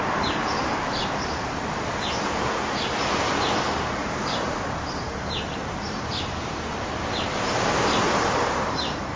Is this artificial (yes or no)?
yes